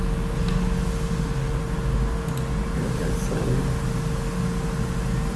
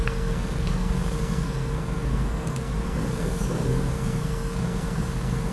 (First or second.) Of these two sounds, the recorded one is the first